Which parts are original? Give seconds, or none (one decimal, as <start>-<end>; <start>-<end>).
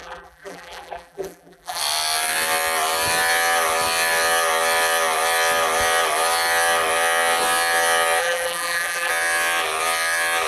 1.8-8.2; 9.1-10.5